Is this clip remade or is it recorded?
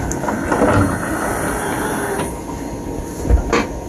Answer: recorded